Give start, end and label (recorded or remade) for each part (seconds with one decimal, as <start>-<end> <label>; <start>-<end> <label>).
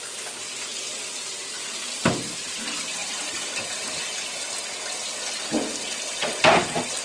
0.0-3.0 recorded; 3.0-4.5 remade; 4.5-7.0 recorded